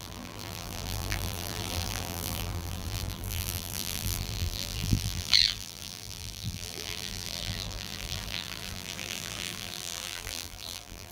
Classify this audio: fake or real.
fake